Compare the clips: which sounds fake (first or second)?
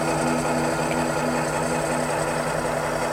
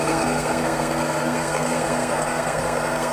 second